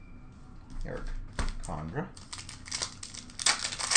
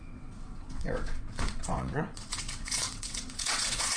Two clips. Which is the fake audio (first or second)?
second